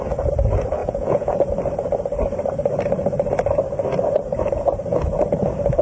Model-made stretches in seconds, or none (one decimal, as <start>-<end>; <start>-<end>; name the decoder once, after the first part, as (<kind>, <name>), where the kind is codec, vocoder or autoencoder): 0.8-1.5 (vocoder, Vocos)